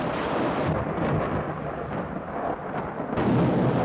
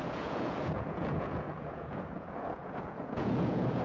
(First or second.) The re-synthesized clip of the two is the second